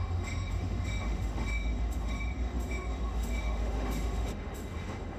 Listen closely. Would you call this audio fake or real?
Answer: fake